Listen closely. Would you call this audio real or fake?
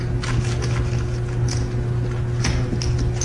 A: real